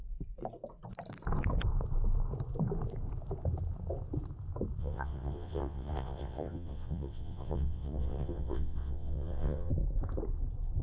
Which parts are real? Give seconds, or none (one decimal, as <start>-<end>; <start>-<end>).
0.0-4.8; 9.7-10.8